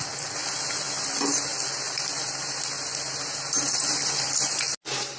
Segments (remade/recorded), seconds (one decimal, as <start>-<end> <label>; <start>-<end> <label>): 0.0-5.2 recorded